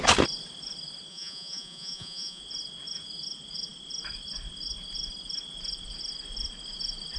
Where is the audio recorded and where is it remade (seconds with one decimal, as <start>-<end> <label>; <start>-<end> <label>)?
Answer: 0.0-1.1 recorded; 1.1-2.4 remade; 2.4-7.2 recorded